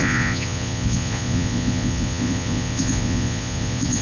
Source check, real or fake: fake